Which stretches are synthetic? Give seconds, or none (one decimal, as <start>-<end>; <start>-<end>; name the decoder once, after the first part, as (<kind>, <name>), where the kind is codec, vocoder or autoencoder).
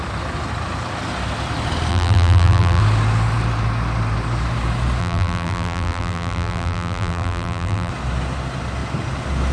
1.9-2.8 (vocoder, BigVGAN v2); 5.0-7.9